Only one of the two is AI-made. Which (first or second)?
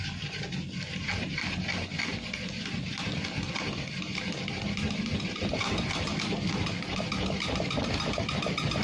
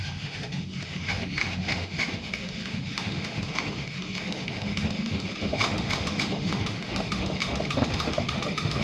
second